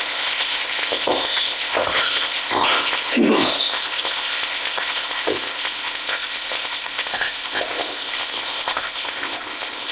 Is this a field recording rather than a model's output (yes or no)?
no